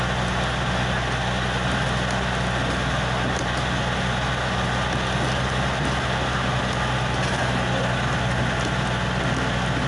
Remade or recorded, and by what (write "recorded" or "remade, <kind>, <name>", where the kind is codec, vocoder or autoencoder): recorded